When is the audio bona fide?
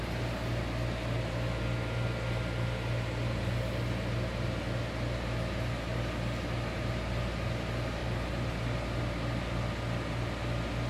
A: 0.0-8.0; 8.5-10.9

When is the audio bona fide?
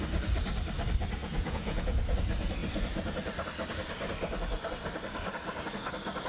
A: 0.0-1.2; 2.0-6.3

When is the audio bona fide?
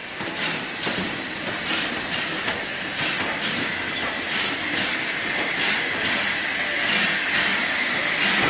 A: 0.0-8.5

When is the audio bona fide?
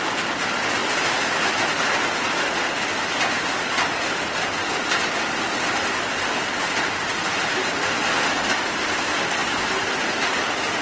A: 0.0-0.8; 5.1-10.8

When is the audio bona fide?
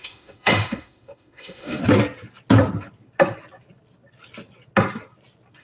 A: 1.8-5.6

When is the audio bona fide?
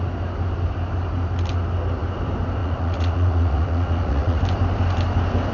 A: 0.0-2.6; 4.4-5.5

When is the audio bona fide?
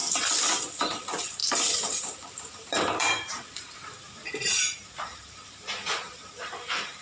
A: none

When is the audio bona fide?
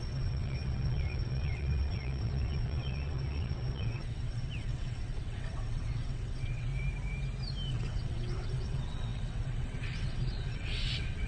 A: 6.7-7.7